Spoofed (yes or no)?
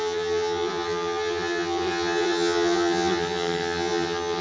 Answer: yes